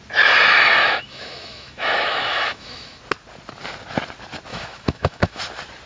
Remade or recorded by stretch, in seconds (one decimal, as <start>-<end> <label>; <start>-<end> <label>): 0.0-0.8 recorded; 0.8-3.0 remade; 3.0-4.5 recorded; 4.5-5.4 remade; 5.4-5.9 recorded